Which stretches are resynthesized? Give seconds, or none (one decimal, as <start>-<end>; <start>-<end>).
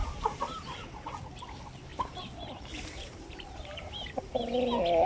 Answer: 0.0-1.3; 1.9-4.3